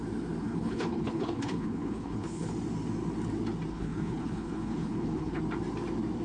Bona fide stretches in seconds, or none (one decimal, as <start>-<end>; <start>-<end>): 0.0-0.4; 2.5-3.7; 5.4-6.2